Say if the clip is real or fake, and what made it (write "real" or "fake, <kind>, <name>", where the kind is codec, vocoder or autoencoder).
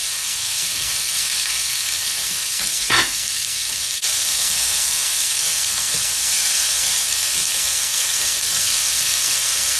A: fake, codec, SNAC